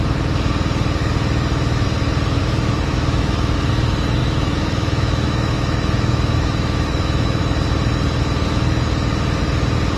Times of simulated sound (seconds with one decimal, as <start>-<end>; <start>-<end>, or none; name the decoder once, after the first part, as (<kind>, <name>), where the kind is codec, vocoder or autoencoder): 2.4-3.7 (autoencoder, DAC-VAE); 4.2-7.4